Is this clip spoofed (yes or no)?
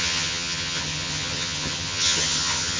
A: yes